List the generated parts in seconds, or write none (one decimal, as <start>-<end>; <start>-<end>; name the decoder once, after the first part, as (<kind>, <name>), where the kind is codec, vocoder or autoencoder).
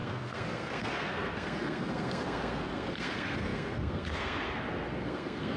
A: 0.0-5.6 (codec, SNAC)